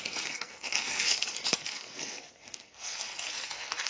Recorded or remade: remade